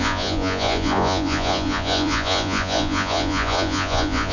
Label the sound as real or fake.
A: fake